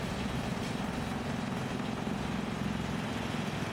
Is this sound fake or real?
real